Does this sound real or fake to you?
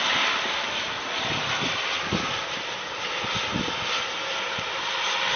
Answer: real